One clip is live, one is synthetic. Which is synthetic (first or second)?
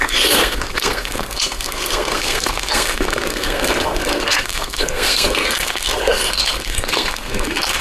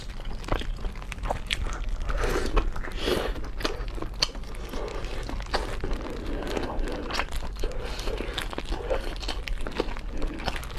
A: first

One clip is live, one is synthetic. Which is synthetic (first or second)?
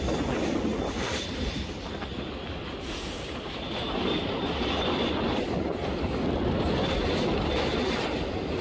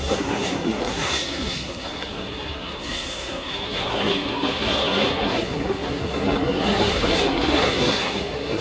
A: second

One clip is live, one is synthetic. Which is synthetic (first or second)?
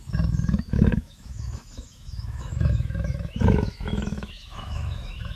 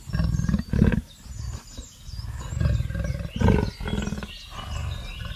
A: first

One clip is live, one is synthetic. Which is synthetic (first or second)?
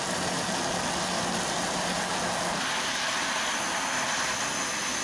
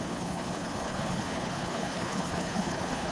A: second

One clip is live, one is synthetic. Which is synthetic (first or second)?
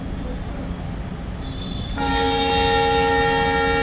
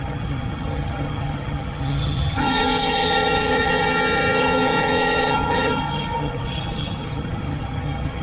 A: second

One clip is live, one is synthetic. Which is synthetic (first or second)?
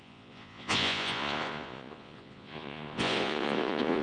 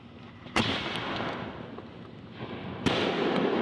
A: first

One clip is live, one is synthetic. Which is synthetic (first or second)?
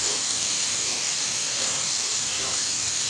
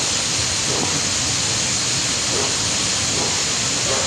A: first